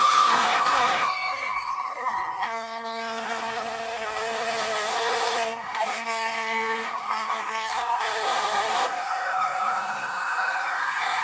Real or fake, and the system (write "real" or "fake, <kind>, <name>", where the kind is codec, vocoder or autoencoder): fake, codec, SNAC